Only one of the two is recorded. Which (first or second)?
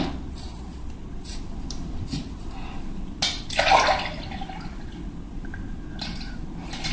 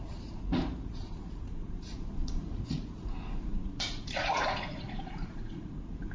first